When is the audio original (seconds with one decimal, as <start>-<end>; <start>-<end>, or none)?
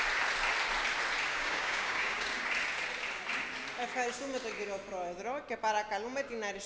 0.0-1.3; 2.4-6.7